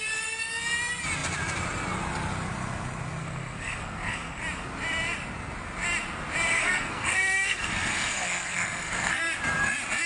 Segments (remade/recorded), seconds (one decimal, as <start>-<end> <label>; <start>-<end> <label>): 0.0-3.2 recorded; 3.2-4.4 remade; 4.4-6.5 recorded; 6.5-9.2 remade; 9.2-10.1 recorded